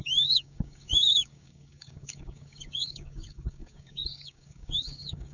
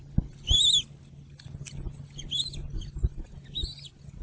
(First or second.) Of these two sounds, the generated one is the first